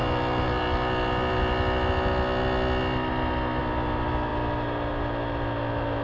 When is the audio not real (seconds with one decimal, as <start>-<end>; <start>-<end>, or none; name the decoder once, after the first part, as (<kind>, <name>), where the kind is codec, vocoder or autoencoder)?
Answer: none